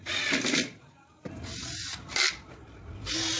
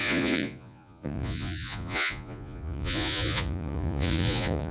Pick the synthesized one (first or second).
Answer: second